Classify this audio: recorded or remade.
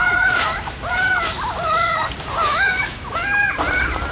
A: recorded